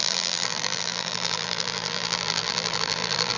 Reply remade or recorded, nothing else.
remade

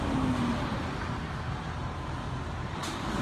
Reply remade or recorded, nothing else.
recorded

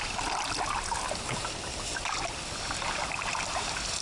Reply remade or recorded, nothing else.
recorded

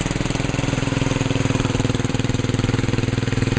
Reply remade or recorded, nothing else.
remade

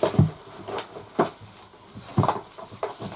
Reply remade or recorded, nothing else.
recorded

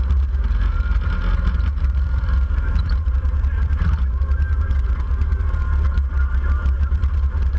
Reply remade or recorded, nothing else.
remade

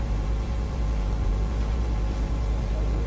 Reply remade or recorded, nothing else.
remade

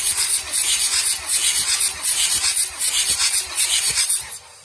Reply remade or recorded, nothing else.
recorded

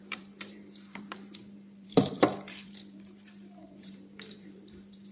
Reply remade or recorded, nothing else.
remade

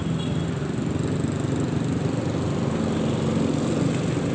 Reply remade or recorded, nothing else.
recorded